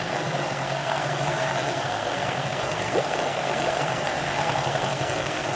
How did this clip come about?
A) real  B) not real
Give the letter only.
B